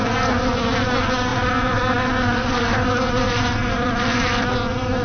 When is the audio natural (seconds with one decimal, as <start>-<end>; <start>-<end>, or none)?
0.0-5.0

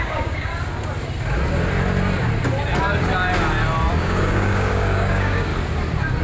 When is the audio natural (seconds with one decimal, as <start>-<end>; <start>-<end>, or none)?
0.5-3.9; 5.5-6.2